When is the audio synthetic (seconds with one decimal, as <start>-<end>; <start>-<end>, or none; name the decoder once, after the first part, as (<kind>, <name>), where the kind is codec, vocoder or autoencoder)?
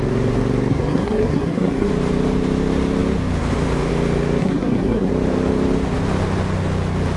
0.7-1.9 (codec, SNAC); 4.4-5.1